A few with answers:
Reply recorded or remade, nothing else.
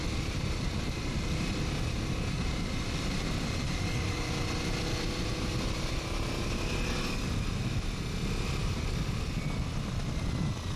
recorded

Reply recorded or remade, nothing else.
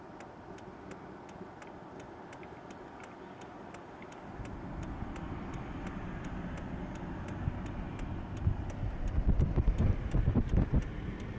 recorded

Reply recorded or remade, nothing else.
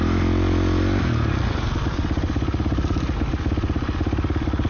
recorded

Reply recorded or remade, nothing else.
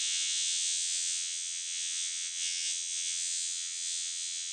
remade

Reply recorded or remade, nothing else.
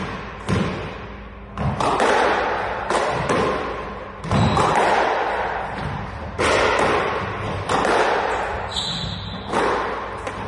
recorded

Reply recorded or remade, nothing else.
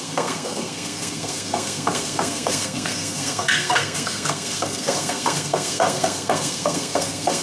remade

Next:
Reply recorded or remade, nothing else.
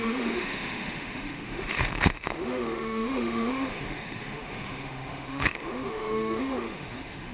remade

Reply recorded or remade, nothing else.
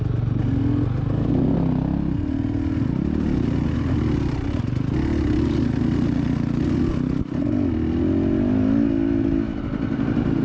recorded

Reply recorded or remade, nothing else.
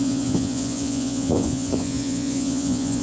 remade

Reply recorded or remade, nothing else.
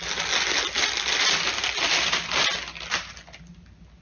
recorded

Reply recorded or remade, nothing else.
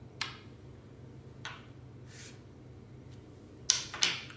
recorded